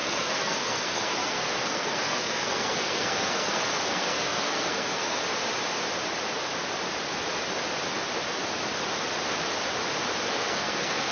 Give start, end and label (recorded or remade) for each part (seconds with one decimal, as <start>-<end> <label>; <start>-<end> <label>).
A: 0.0-5.2 remade; 5.2-10.3 recorded; 10.3-11.1 remade